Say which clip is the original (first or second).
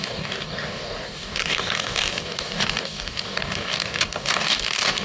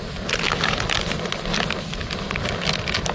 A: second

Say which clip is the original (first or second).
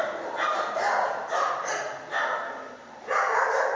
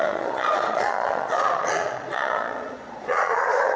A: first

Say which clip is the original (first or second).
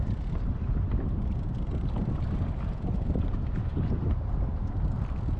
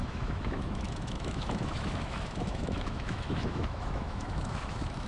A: first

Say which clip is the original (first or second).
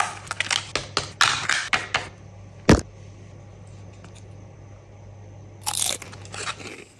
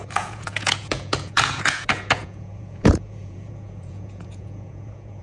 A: first